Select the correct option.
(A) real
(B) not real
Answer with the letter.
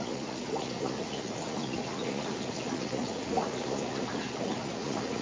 B